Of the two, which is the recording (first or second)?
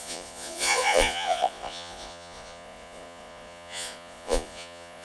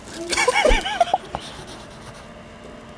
second